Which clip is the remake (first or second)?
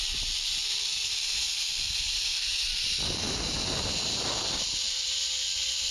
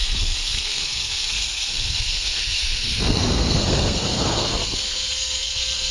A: second